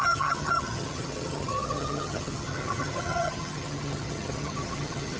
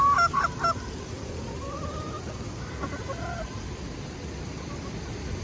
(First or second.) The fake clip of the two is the first